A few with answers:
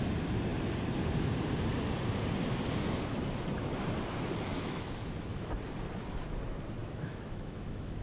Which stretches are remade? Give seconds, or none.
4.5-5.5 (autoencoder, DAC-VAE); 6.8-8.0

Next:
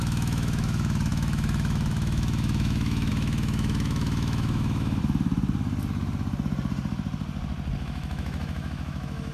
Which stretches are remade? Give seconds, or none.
0.0-5.0 (autoencoder, DAC-VAE); 7.8-9.3

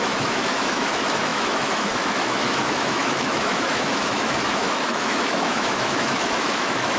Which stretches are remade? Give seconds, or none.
0.0-7.0 (autoencoder, DAC-VAE)

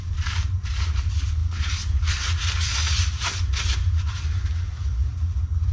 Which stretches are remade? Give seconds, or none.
none

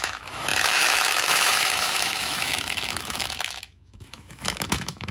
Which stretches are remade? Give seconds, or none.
0.0-5.1 (autoencoder, DAC-VAE)